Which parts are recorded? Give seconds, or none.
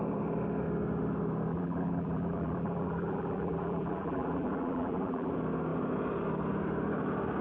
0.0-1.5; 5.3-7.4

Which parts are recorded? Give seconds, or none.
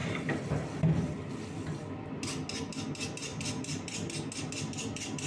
2.1-5.3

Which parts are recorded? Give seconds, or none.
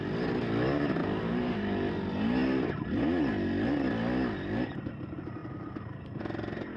0.0-6.8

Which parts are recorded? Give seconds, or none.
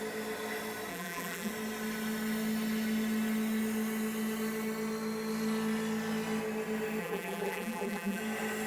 0.0-0.9; 1.5-7.0; 8.2-8.7